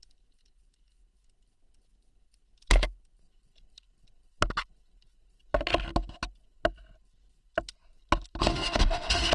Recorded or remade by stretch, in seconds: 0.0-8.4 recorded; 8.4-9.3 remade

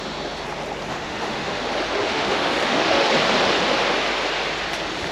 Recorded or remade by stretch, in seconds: 0.0-0.9 recorded; 0.9-1.6 remade; 1.6-2.0 recorded; 2.0-3.1 remade; 3.1-5.1 recorded

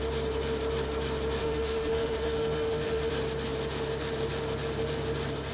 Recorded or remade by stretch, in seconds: 0.0-1.4 recorded; 1.4-3.1 remade; 3.1-5.5 recorded

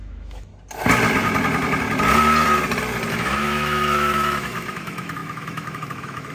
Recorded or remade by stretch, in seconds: 0.0-0.5 remade; 0.5-3.1 recorded; 3.1-6.3 remade

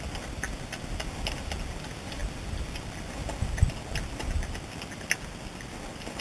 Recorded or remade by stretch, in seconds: 0.0-6.2 recorded